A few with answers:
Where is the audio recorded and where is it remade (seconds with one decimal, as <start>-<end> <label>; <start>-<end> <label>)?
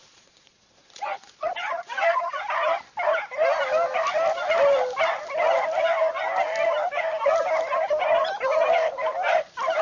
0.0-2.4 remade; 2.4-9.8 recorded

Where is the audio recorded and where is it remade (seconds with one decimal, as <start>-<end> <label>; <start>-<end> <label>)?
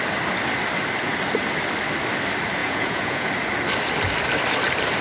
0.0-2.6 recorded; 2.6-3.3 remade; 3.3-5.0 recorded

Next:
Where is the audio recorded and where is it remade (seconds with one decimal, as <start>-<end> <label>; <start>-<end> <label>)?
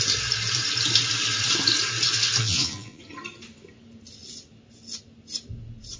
0.0-2.4 recorded; 2.4-3.0 remade; 3.0-6.0 recorded